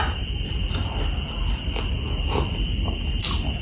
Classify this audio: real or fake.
real